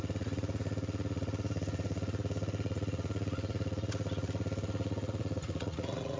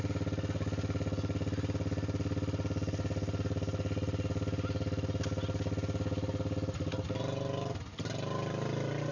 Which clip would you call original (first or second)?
second